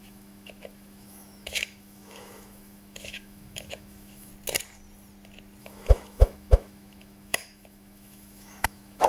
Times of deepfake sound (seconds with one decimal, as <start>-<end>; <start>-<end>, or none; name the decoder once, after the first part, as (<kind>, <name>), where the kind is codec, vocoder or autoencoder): 0.0-4.3 (autoencoder, DAC-VAE); 5.6-9.1